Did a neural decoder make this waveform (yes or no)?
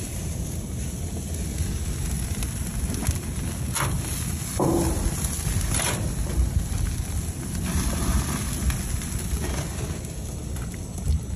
no